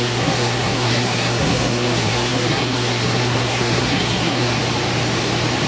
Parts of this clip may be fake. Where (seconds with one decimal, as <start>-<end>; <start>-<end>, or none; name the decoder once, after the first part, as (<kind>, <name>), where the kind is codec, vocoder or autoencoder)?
0.0-4.6 (codec, SNAC)